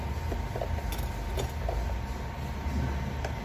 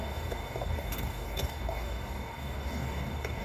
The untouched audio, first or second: first